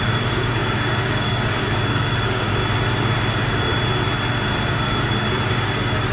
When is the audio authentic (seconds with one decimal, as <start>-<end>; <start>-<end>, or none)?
2.6-3.3; 3.7-4.7